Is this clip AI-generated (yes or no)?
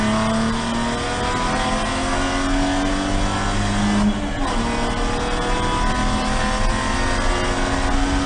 no